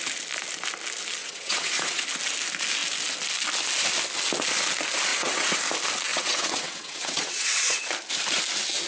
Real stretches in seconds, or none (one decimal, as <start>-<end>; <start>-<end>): 0.0-1.2; 2.0-5.1; 5.6-6.1; 7.9-8.9